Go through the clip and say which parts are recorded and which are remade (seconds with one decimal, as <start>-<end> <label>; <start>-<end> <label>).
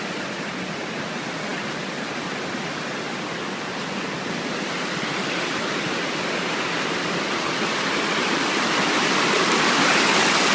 0.0-10.5 recorded